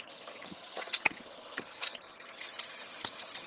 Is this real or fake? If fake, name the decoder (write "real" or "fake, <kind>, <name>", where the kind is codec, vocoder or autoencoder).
fake, vocoder, HiFi-GAN